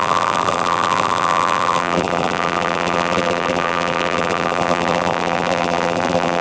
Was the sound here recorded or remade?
remade